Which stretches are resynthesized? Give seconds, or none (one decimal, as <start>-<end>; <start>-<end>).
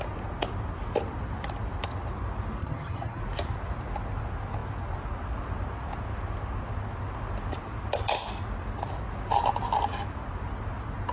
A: 2.6-3.2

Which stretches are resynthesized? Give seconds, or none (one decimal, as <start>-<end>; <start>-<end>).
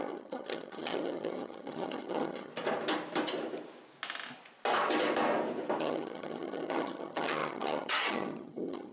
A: 0.0-2.5; 5.8-8.9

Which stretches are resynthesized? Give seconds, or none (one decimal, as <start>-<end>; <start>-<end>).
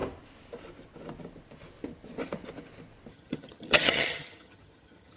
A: 3.1-5.2